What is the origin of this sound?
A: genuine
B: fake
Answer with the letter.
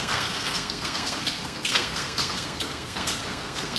B